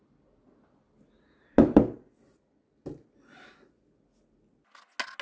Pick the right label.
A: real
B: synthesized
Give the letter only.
A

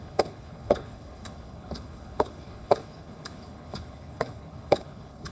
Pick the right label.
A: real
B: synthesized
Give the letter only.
B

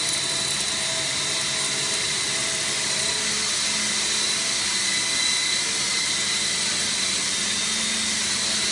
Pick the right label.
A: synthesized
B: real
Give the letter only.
B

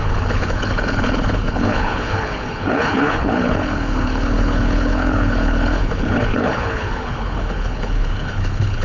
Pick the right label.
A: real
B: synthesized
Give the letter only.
B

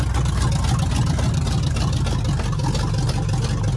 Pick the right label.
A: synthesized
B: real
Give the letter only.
B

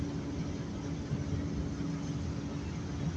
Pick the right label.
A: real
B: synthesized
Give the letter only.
A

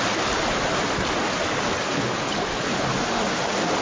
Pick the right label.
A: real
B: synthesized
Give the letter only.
A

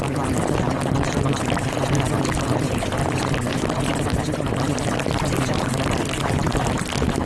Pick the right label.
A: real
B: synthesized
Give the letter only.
A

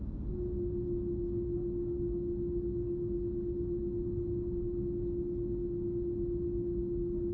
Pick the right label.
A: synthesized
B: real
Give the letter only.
B